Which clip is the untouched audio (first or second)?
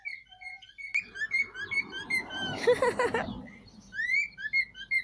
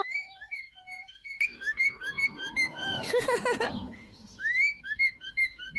first